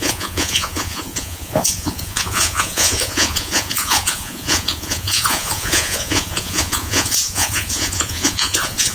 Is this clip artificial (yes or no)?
yes